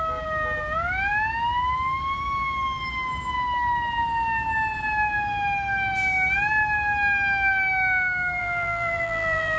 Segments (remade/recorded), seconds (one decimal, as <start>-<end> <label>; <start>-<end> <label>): 0.0-8.4 recorded; 8.4-9.6 remade